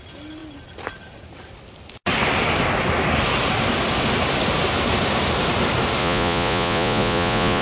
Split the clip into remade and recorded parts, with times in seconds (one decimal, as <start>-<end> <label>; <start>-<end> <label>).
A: 0.0-6.0 recorded; 6.0-7.6 remade